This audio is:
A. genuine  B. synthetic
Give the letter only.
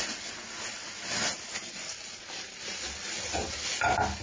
A